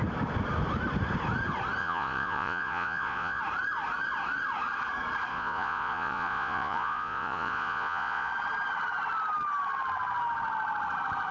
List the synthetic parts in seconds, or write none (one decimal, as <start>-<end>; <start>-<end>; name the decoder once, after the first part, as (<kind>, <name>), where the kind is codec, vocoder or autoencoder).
1.8-3.4 (vocoder, Vocos); 5.3-8.3